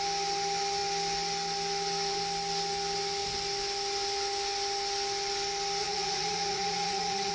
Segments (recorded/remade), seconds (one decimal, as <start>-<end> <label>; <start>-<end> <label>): 0.0-5.8 recorded; 5.8-7.3 remade